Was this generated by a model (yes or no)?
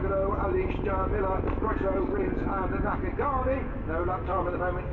no